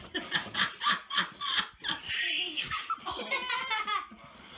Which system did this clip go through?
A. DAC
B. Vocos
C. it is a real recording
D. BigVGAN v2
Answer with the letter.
D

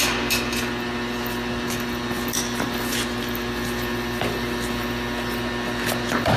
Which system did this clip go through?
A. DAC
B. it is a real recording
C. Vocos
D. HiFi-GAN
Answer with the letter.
B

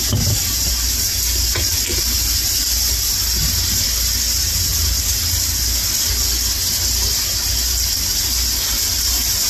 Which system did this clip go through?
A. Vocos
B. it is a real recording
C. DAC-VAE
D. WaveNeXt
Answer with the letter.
B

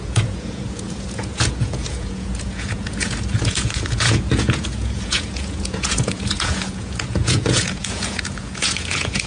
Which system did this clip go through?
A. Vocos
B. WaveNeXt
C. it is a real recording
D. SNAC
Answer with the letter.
A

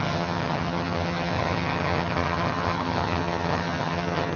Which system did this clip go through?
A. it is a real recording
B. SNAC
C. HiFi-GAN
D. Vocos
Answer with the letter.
C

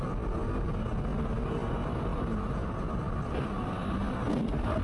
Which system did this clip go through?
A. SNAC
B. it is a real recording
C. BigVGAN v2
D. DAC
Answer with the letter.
B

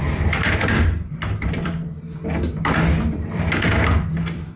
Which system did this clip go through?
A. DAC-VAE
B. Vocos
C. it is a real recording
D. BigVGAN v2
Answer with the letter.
D